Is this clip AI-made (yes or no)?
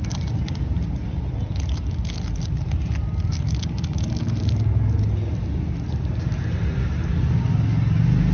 no